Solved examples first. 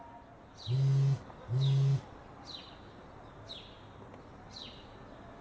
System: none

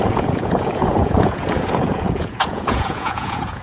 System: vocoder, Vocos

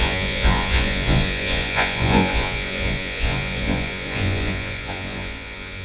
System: vocoder, Vocos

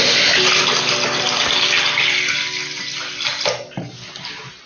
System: none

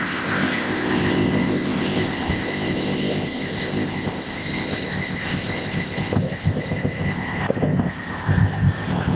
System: codec, ZipCodec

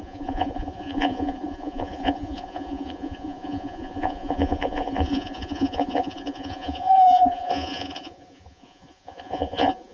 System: vocoder, Vocos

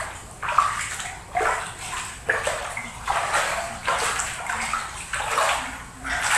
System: none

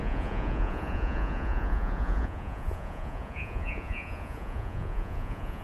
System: vocoder, Vocos